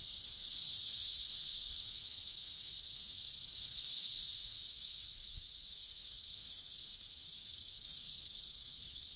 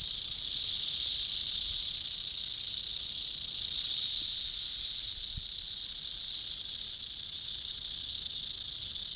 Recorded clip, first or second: second